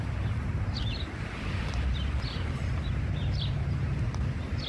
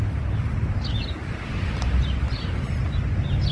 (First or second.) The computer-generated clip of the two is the first